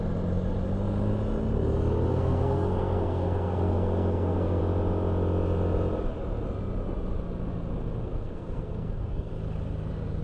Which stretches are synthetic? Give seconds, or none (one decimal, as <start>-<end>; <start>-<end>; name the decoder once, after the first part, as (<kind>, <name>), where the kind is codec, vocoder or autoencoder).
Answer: 2.1-4.6 (codec, SNAC); 8.0-9.3